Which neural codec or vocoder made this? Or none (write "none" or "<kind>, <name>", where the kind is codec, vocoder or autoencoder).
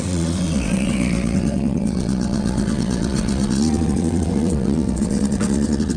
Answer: vocoder, WaveNeXt